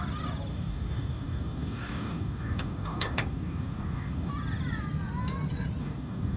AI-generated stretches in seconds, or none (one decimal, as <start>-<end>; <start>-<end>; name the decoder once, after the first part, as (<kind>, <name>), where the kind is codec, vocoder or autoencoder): 0.5-4.3 (codec, DAC); 5.8-6.4